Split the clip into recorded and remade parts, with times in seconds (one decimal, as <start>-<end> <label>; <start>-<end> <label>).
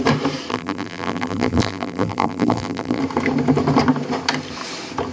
0.0-0.5 recorded; 0.5-3.0 remade; 3.0-5.1 recorded